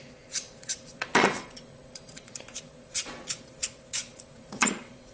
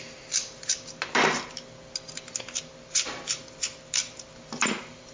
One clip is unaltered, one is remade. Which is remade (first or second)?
first